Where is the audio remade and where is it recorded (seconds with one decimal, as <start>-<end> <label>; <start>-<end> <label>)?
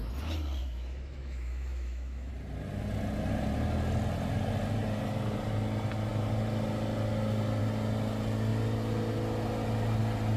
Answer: 0.0-0.6 recorded; 0.6-2.3 remade; 2.3-10.4 recorded